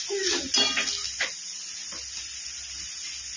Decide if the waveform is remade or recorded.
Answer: recorded